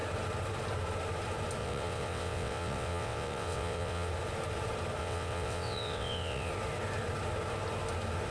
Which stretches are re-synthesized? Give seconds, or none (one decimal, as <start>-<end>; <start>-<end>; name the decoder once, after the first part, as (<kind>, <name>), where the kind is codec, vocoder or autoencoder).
1.6-4.1 (vocoder, WaveNeXt); 5.0-6.5